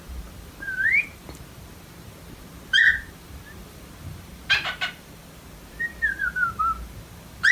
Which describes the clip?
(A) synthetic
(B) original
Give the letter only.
A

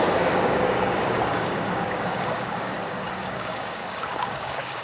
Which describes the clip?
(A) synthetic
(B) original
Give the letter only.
A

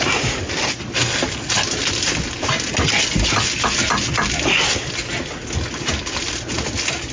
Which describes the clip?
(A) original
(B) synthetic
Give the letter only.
A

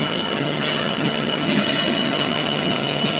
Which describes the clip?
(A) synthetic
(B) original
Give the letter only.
A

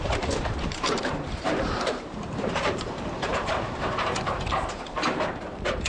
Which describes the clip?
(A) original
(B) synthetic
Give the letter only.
B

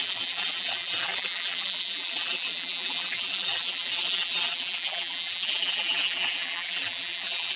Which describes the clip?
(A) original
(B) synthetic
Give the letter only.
B